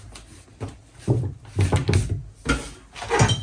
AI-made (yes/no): no